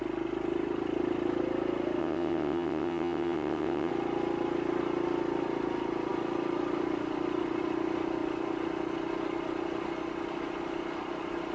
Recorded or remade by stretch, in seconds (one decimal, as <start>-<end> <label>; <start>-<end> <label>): 0.0-2.0 recorded; 2.0-3.9 remade; 3.9-11.5 recorded

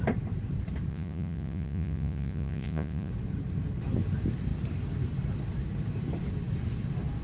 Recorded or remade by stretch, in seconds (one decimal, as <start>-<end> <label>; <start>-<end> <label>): 0.0-0.9 recorded; 0.9-3.1 remade; 3.1-7.2 recorded

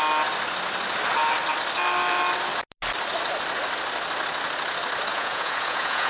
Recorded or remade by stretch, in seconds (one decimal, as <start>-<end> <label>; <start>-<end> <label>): 0.0-5.1 recorded; 5.1-6.1 remade

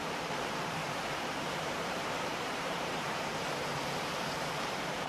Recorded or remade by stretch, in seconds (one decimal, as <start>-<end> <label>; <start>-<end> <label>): 0.0-0.8 remade; 0.8-1.6 recorded; 1.6-5.1 remade

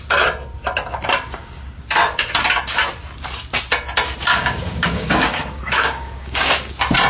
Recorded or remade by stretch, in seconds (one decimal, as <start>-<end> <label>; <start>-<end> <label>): 0.0-4.3 recorded; 4.3-6.5 remade; 6.5-7.1 recorded